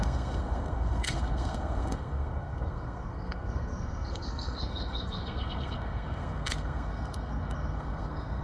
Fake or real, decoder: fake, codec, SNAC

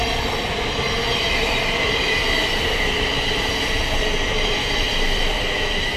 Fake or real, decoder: fake, vocoder, BigVGAN v2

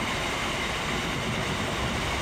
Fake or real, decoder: real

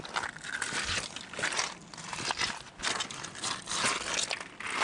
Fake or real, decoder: real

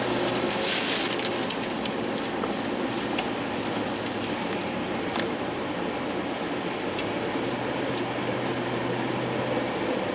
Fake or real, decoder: real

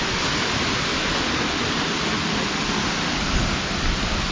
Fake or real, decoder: real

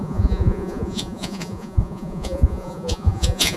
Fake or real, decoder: fake, vocoder, Vocos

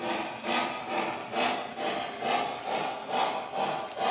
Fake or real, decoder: real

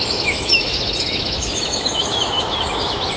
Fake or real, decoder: fake, autoencoder, DAC-VAE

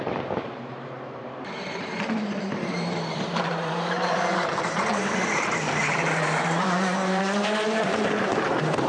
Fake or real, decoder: fake, vocoder, BigVGAN v2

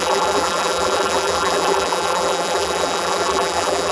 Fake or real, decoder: fake, vocoder, BigVGAN v2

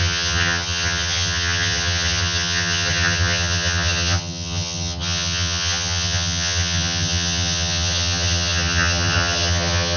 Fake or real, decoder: fake, vocoder, HiFi-GAN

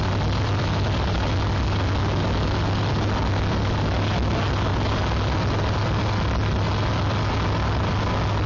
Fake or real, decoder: real